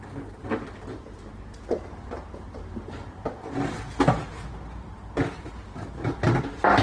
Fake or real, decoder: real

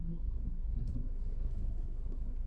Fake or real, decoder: fake, codec, SNAC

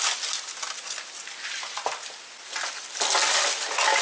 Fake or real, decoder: real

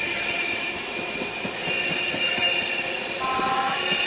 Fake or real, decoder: real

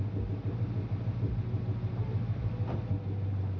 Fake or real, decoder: real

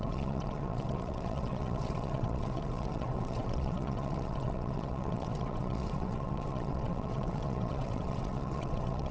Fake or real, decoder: fake, vocoder, WaveNeXt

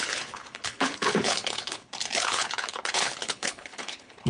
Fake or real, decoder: fake, codec, HILCodec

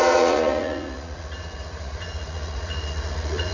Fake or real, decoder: fake, vocoder, Vocos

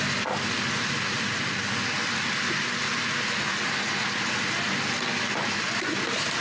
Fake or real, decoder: real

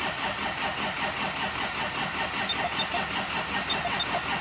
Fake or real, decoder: real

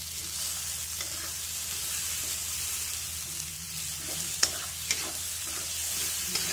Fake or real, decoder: real